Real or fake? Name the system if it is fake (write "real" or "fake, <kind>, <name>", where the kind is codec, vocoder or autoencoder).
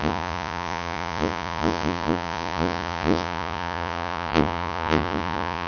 fake, vocoder, Vocos